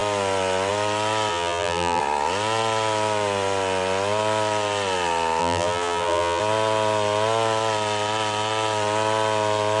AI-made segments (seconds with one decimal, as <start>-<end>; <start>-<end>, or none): 1.3-2.0; 5.4-6.4